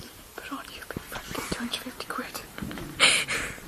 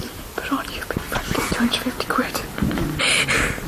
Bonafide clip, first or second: second